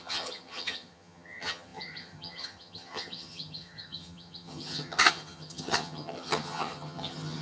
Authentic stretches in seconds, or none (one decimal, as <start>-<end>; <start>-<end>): none